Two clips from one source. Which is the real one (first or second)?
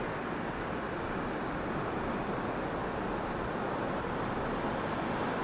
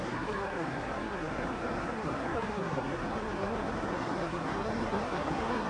first